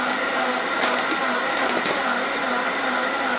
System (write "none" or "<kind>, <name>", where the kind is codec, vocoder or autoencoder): none